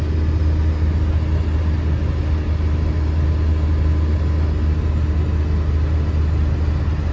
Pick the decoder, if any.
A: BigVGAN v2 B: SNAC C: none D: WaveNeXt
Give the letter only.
C